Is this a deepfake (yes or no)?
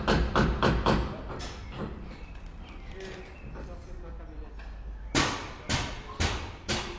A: no